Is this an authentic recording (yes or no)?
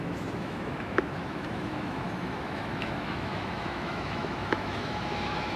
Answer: no